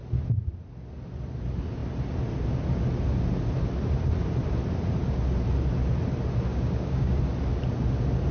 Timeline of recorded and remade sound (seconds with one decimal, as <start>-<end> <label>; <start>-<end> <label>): 0.0-6.5 recorded; 6.5-7.2 remade; 7.2-8.3 recorded

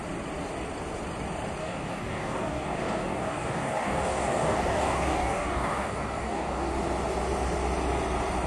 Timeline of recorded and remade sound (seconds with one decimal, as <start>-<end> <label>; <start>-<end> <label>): 0.0-1.6 recorded; 1.6-6.7 remade; 6.7-8.5 recorded

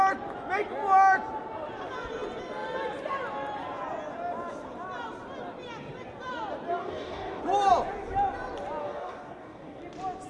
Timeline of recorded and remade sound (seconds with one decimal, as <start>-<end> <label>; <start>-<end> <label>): 0.0-6.8 recorded; 6.8-7.4 remade; 7.4-8.8 recorded; 8.8-9.8 remade; 9.8-10.3 recorded

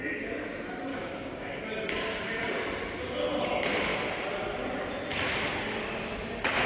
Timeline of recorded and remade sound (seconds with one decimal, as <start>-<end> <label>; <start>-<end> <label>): 0.0-0.9 recorded; 0.9-1.6 remade; 1.6-6.7 recorded

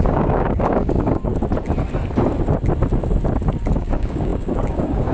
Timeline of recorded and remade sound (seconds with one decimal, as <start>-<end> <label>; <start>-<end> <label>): 0.0-1.3 remade; 1.3-3.7 recorded; 3.7-5.1 remade

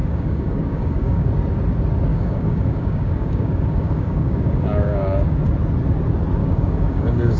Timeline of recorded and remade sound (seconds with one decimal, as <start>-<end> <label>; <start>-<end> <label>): 0.0-1.3 remade; 1.3-2.1 recorded; 2.1-5.5 remade; 5.5-6.4 recorded; 6.4-7.4 remade